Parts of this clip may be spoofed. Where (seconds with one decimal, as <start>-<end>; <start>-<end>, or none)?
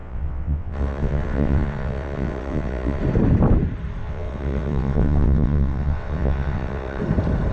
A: 0.0-3.0; 4.0-7.0